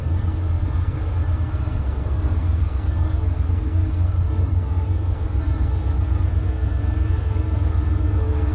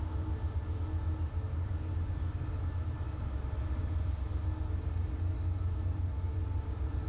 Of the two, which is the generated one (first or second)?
first